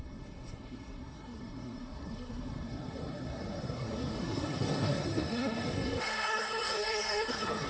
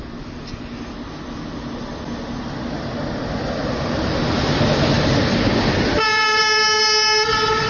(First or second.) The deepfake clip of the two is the first